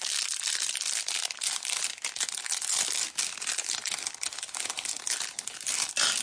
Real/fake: real